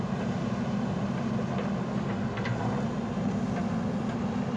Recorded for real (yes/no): yes